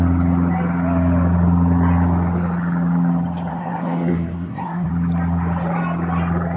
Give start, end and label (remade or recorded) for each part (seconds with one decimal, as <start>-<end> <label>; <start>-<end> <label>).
0.0-3.5 recorded; 3.5-4.9 remade; 4.9-6.6 recorded